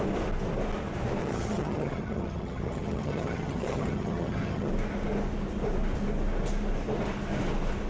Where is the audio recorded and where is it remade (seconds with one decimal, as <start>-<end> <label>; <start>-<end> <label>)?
0.0-1.2 recorded; 1.2-4.7 remade; 4.7-7.9 recorded